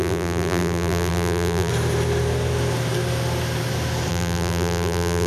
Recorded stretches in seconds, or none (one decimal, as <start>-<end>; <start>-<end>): 1.7-4.1